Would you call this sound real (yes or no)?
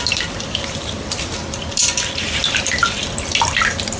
no